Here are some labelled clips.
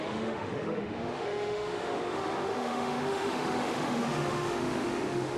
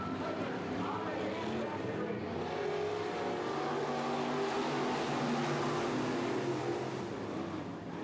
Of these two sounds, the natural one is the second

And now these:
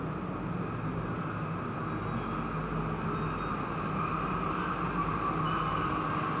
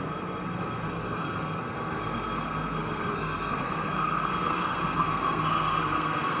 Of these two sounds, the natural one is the first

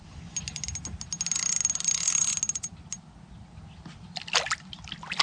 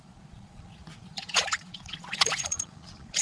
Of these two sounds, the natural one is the first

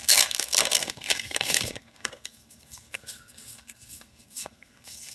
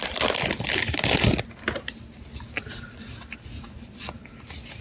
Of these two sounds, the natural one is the second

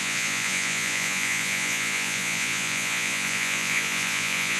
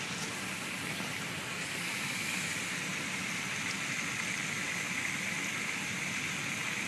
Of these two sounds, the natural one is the second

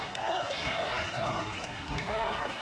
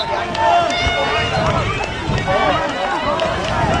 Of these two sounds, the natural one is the second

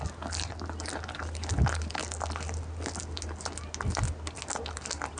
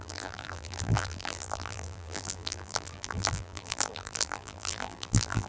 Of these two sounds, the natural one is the first